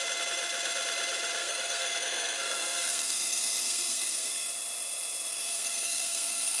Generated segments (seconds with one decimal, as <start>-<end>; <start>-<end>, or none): 1.4-4.5; 5.3-6.6